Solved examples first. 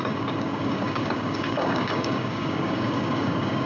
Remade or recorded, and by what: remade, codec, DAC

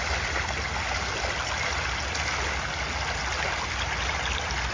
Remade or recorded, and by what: recorded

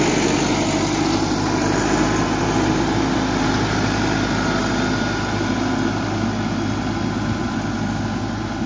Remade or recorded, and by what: recorded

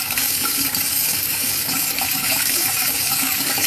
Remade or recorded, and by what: remade, codec, DAC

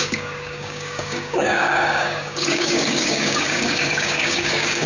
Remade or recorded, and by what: remade, codec, DAC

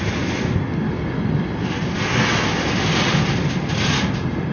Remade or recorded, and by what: recorded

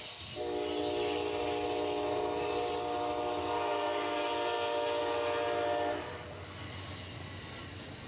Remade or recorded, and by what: recorded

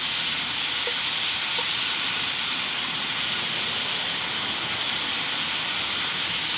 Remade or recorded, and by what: recorded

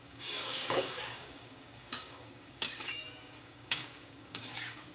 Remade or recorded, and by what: remade, codec, DAC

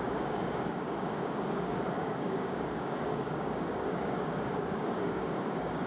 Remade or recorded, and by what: remade, codec, DAC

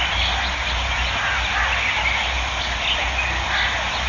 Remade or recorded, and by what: recorded